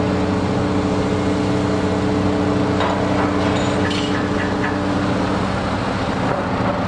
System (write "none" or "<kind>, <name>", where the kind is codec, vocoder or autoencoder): none